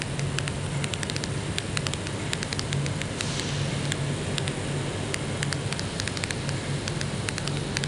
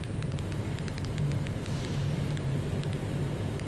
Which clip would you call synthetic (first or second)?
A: second